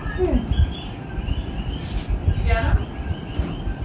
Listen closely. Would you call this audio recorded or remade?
recorded